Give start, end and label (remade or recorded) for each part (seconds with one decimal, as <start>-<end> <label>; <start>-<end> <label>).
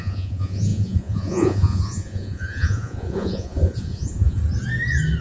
0.0-4.4 remade; 4.4-5.2 recorded